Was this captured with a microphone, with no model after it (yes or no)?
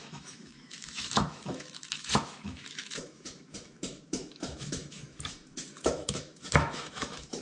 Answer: no